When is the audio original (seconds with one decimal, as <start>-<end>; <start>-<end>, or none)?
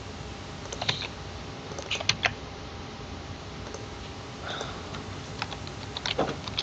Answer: 0.0-2.3; 3.5-6.6